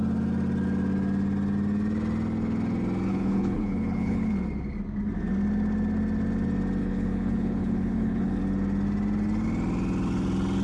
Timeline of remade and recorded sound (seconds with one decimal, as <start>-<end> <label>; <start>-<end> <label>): 0.0-3.1 recorded; 3.1-4.3 remade; 4.3-6.8 recorded; 6.8-8.4 remade; 8.4-10.6 recorded